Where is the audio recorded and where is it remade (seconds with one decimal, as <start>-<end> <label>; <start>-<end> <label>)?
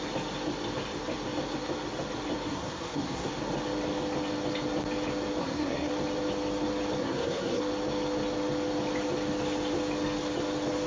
0.0-2.5 recorded; 2.5-3.3 remade; 3.3-5.4 recorded; 5.4-5.9 remade; 5.9-7.0 recorded; 7.0-7.6 remade; 7.6-10.9 recorded